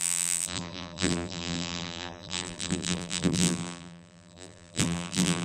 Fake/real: fake